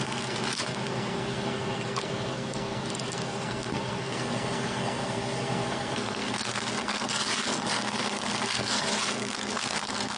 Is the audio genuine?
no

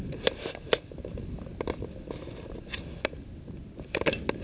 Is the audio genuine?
yes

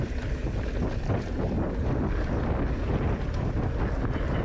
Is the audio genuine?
yes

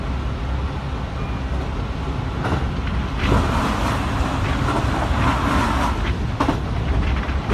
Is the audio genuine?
yes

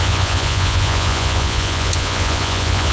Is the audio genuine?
no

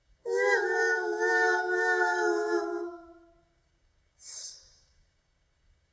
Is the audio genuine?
no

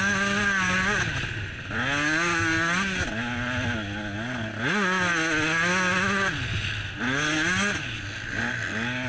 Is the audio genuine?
yes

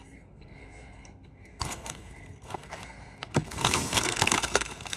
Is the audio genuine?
no